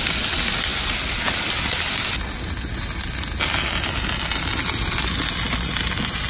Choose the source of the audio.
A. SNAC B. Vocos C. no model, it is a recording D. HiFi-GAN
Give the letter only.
C